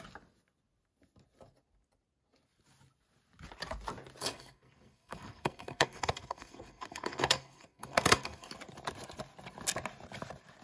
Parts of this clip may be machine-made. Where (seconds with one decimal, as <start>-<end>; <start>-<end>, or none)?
4.2-8.5